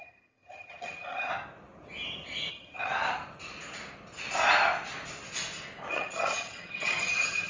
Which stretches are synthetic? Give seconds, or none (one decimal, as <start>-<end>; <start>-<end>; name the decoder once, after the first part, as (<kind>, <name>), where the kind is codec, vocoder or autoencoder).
0.0-1.3 (vocoder, HiFi-GAN); 2.5-2.9; 5.9-7.5